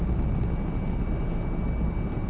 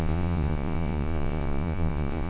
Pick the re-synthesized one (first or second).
second